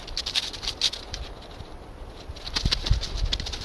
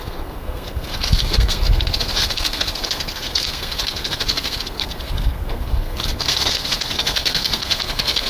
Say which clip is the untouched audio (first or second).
first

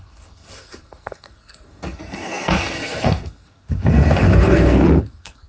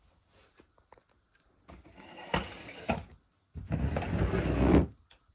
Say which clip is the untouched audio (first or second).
second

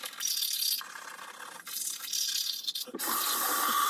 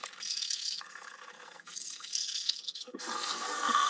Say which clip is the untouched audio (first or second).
first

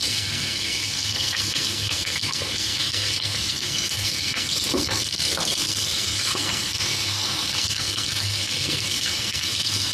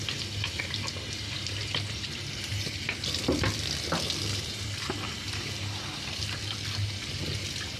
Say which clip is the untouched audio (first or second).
second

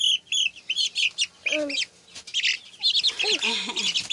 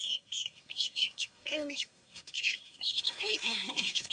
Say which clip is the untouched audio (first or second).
first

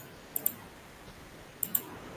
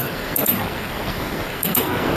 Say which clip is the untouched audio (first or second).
first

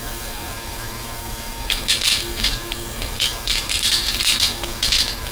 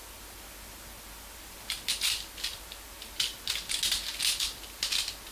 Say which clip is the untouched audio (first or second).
second